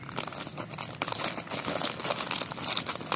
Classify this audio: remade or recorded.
recorded